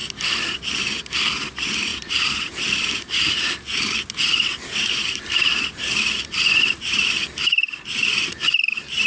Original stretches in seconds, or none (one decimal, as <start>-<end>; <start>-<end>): 0.0-1.9; 3.7-4.5; 6.3-9.1